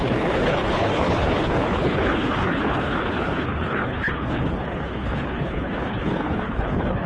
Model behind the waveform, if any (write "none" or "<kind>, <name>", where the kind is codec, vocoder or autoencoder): codec, HILCodec